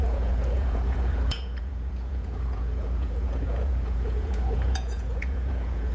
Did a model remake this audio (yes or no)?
yes